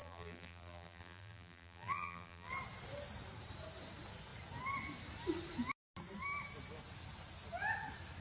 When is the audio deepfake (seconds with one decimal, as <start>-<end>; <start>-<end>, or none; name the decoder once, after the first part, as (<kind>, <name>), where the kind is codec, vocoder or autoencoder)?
0.0-2.5 (vocoder, BigVGAN v2)